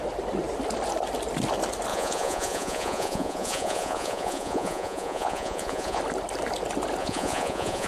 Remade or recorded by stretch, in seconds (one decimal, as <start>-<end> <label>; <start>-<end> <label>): 0.0-1.9 recorded; 1.9-6.0 remade; 6.0-7.0 recorded; 7.0-7.9 remade